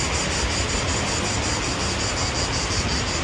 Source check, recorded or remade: recorded